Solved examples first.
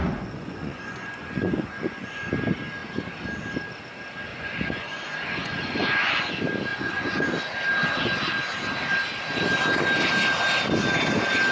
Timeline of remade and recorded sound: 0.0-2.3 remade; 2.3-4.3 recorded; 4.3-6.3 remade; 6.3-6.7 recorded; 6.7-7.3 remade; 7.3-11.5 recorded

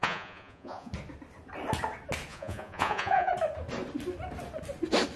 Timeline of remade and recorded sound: 0.0-0.9 remade; 0.9-2.3 recorded; 2.3-3.3 remade; 3.3-5.2 recorded

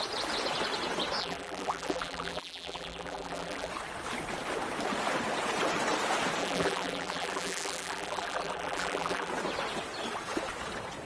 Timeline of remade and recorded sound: 0.0-1.2 recorded; 1.2-3.7 remade; 3.7-6.4 recorded; 6.4-9.3 remade; 9.3-11.1 recorded

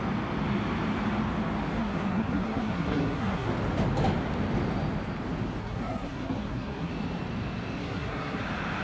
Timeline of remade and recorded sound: 0.0-1.8 recorded; 1.8-3.5 remade; 3.5-5.6 recorded; 5.6-6.9 remade; 6.9-7.8 recorded; 7.8-8.4 remade; 8.4-8.8 recorded

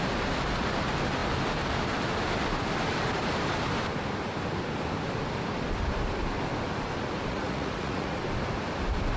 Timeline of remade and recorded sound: 0.0-7.3 recorded; 7.3-8.2 remade; 8.2-9.2 recorded

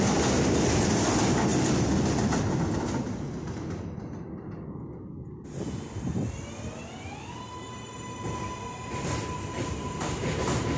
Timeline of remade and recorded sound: 0.0-10.8 recorded

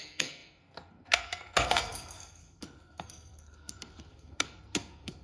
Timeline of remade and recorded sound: 0.0-5.2 remade

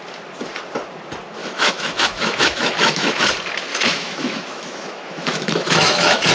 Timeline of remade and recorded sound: 0.0-1.4 recorded; 1.4-3.3 remade; 3.3-3.7 recorded; 3.7-6.3 remade